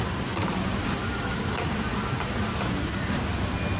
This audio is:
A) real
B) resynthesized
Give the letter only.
B